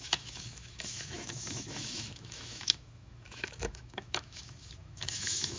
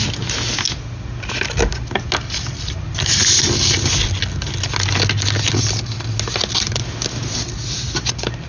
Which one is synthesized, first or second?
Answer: first